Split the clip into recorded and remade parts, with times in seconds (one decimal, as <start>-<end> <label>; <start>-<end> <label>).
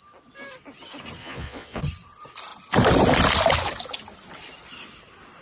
0.0-1.2 recorded; 1.2-1.8 remade; 1.8-5.4 recorded